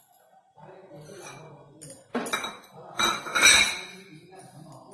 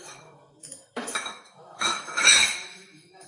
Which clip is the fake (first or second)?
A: second